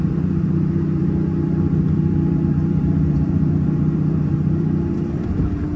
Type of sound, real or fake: fake